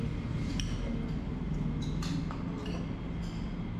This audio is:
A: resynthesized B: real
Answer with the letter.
B